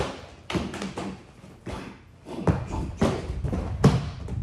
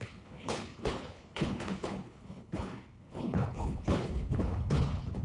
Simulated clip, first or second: second